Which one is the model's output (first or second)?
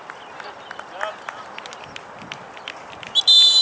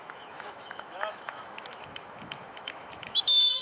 second